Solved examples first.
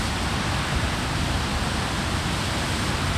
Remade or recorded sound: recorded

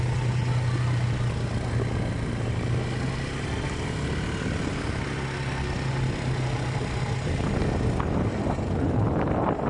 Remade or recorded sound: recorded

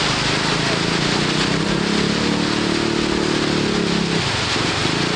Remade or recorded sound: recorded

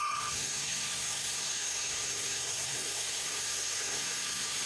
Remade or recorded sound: remade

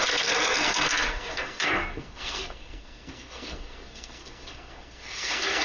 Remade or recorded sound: remade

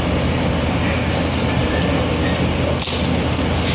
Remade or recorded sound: recorded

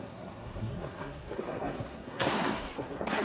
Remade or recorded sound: remade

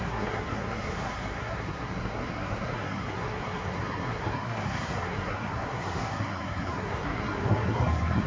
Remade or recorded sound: remade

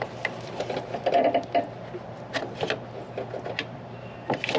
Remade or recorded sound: recorded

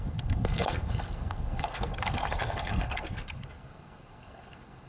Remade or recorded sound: remade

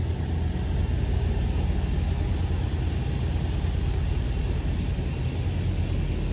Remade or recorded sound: recorded